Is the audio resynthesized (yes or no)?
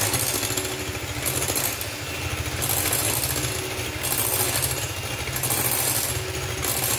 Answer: no